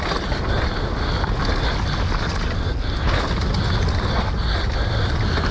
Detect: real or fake real